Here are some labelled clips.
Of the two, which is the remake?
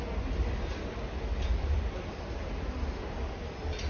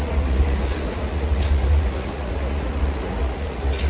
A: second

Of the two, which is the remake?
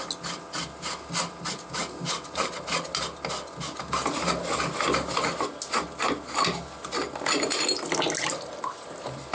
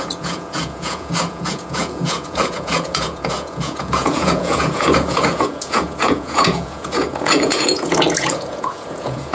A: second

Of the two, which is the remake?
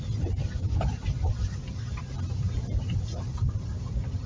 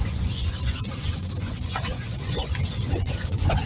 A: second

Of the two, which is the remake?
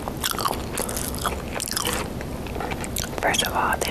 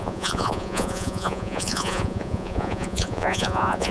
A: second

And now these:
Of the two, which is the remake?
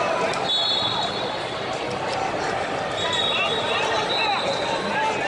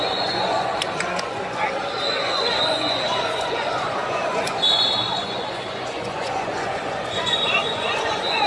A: second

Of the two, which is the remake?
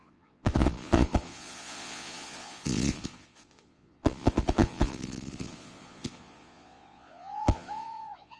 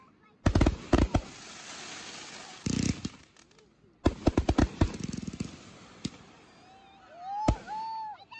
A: first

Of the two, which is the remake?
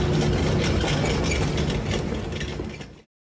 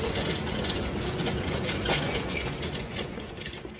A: second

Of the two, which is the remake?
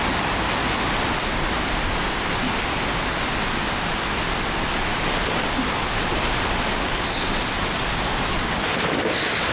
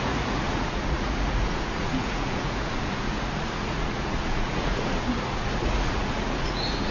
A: second